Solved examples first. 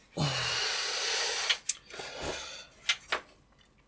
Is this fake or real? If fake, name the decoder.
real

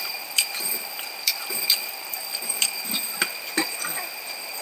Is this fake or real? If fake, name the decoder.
fake, vocoder, BigVGAN v2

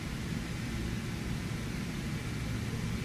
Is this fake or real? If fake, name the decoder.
real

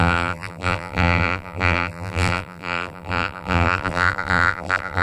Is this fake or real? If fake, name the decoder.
fake, vocoder, BigVGAN v2